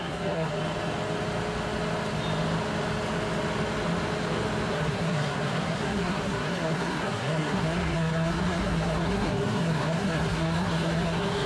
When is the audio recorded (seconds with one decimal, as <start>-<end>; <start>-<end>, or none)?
0.6-4.7